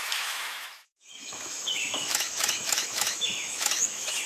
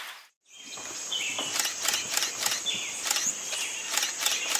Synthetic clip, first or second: first